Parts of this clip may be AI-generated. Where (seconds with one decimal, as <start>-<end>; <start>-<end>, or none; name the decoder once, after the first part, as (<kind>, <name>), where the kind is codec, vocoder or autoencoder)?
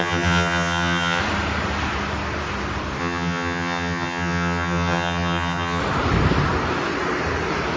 0.0-1.2 (vocoder, HiFi-GAN); 3.0-5.8